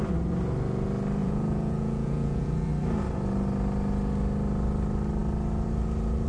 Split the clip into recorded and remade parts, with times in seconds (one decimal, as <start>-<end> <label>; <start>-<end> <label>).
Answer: 0.0-1.2 recorded; 1.2-2.7 remade; 2.7-6.3 recorded